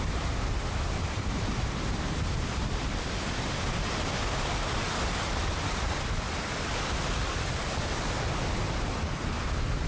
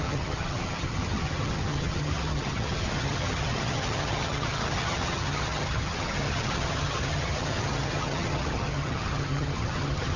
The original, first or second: first